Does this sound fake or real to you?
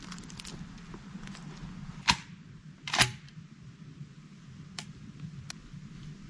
real